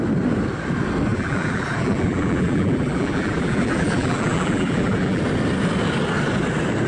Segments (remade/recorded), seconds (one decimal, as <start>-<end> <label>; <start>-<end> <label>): 0.0-1.1 recorded; 1.1-5.2 remade; 5.2-6.9 recorded